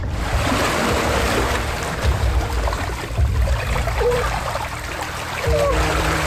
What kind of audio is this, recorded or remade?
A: remade